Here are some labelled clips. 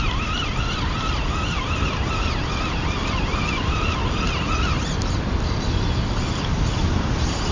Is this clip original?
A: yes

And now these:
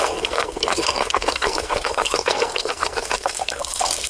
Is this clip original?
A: no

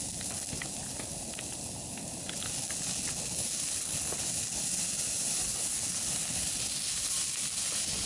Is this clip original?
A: yes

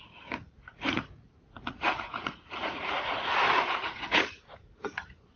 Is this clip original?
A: no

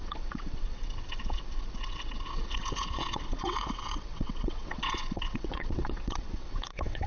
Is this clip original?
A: no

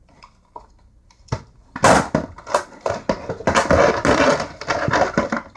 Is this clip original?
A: yes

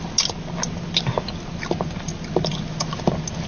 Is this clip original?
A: yes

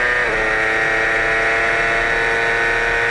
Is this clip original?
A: yes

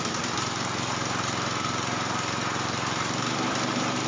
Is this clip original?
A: no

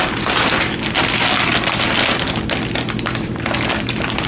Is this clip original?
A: yes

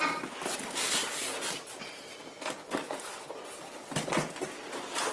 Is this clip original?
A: yes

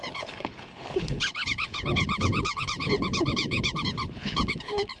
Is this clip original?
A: no